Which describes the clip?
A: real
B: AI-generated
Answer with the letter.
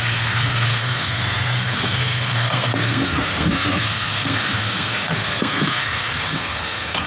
B